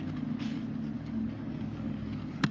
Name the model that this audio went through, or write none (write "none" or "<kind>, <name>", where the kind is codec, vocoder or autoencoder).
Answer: codec, DAC